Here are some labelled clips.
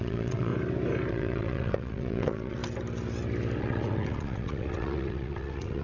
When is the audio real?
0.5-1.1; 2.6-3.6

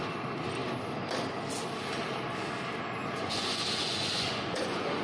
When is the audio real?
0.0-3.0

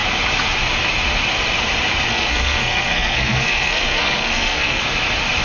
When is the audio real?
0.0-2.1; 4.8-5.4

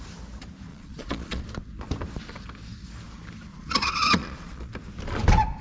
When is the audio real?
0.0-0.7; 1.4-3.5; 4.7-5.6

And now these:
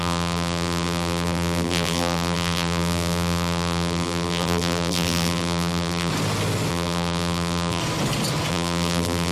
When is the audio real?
6.1-6.7; 7.8-8.5

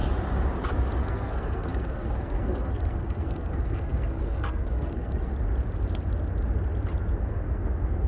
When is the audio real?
0.0-1.0; 5.3-7.3

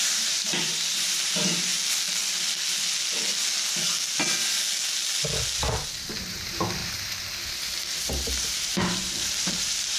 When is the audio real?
1.7-6.0